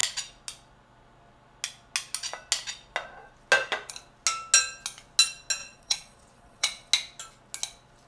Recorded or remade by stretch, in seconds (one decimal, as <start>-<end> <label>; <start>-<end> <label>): 0.0-5.6 recorded; 5.6-6.9 remade; 6.9-8.1 recorded